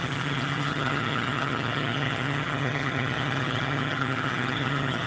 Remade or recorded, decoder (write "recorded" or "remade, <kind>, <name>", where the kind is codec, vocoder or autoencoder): remade, vocoder, HiFi-GAN